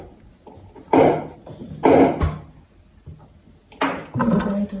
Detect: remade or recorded recorded